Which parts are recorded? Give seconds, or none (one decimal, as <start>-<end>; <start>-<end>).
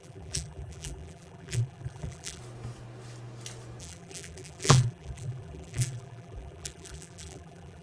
2.4-3.8